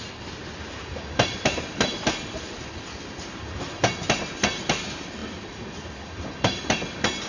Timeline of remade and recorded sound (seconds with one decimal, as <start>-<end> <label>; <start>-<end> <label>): 0.0-7.3 recorded